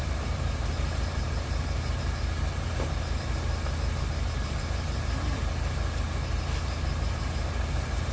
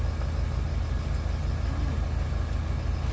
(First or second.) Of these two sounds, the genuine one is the second